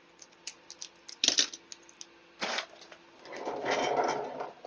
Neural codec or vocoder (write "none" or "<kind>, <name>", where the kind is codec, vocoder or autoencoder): none